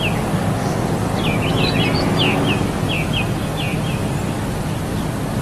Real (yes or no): yes